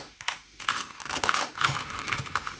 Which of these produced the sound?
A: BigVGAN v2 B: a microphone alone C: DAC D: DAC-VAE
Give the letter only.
D